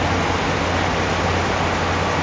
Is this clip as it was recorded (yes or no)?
yes